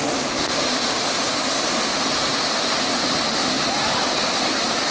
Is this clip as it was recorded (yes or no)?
yes